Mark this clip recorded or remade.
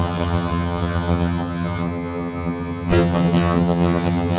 remade